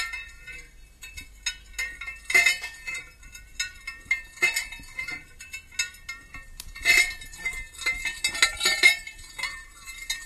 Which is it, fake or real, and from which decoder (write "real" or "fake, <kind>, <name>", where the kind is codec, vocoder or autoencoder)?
real